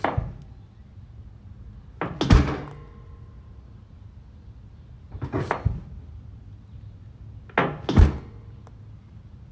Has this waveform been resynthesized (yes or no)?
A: no